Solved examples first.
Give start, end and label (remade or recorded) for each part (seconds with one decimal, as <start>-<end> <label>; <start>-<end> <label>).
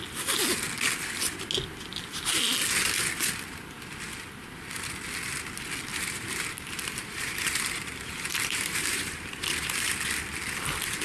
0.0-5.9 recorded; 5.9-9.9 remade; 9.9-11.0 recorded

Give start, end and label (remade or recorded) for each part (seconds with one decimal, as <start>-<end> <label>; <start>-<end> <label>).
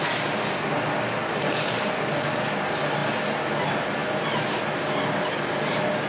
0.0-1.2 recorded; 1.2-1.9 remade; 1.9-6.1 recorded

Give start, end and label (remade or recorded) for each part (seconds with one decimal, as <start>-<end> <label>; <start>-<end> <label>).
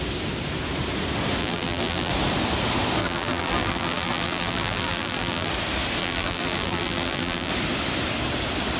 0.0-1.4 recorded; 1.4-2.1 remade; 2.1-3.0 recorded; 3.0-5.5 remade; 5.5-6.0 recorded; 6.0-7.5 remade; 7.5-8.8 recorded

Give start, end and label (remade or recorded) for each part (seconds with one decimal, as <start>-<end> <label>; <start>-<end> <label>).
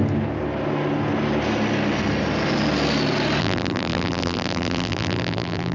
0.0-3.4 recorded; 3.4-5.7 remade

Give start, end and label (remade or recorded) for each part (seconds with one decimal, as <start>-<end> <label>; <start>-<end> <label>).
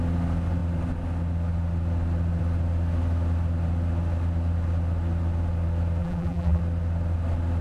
0.0-6.0 recorded; 6.0-6.6 remade; 6.6-7.6 recorded